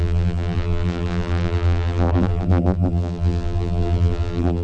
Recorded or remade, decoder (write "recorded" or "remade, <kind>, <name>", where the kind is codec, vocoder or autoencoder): remade, vocoder, BigVGAN v2